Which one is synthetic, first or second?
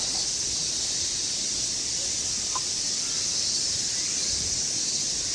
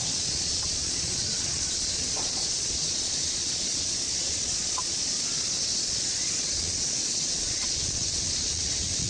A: second